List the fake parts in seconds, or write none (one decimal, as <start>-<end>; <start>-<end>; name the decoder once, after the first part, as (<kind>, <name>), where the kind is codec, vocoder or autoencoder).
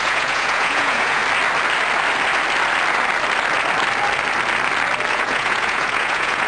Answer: 0.0-1.2 (vocoder, Vocos); 5.1-6.5